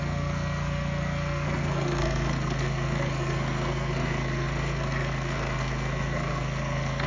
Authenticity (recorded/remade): remade